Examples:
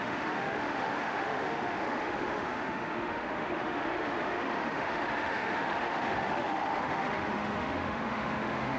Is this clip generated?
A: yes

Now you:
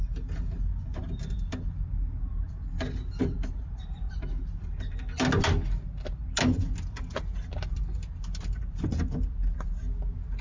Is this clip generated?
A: no